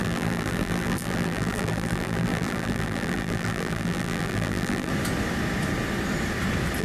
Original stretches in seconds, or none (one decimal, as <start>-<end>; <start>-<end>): 4.9-6.8